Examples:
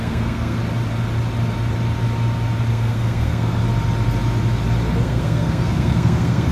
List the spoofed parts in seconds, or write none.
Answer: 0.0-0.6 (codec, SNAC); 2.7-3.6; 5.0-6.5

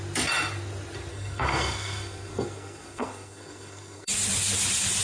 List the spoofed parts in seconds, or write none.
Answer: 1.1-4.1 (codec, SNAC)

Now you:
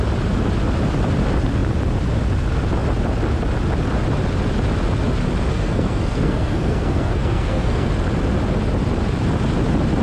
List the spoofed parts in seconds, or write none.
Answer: 5.5-7.9 (codec, SNAC)

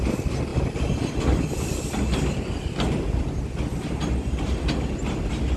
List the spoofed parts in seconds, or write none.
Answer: none

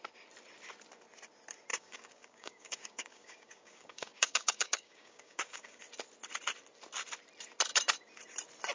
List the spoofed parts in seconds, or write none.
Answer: 1.7-5.8 (codec, DAC)